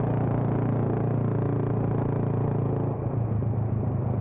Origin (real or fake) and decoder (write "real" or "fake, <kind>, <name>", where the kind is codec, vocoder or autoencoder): real